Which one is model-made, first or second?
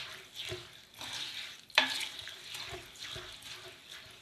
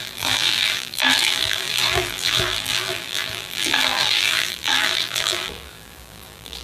second